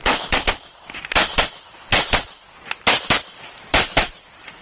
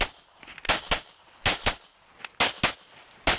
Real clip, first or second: second